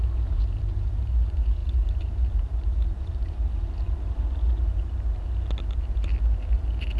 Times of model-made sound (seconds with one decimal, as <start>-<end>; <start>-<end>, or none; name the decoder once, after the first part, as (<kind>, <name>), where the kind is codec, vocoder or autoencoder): 0.0-3.5 (vocoder, BigVGAN v2)